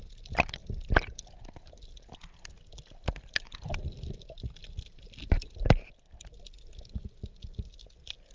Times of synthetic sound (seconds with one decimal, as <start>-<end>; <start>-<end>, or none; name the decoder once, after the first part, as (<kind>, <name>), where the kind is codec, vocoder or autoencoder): none